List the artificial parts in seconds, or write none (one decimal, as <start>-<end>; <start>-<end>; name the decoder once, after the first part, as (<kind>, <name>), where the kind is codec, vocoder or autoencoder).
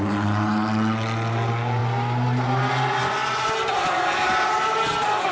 none